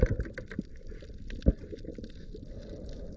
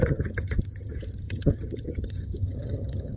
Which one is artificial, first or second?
second